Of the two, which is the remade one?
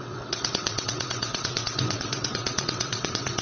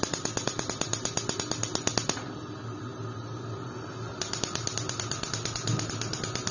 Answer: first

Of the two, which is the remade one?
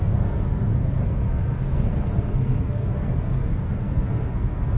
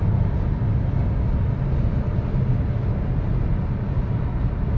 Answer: first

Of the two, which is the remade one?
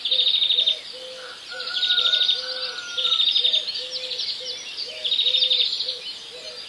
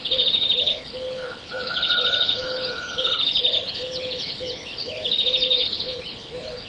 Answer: second